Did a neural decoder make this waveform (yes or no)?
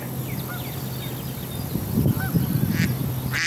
no